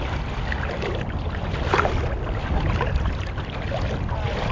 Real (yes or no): yes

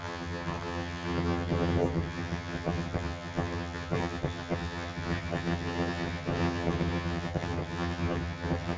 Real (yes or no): no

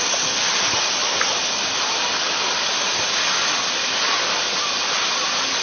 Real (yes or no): yes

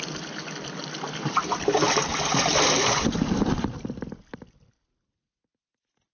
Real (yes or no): yes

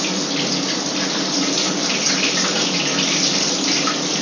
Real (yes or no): yes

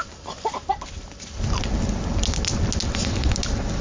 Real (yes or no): yes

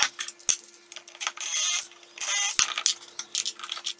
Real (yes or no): yes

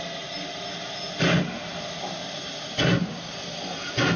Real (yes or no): yes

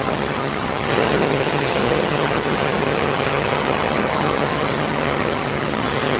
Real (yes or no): no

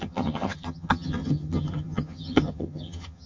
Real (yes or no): no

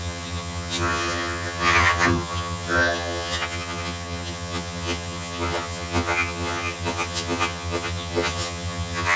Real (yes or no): no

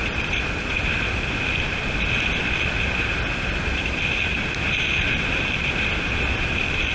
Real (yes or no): yes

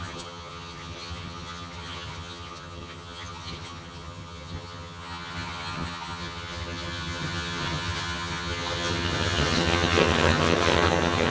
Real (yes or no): no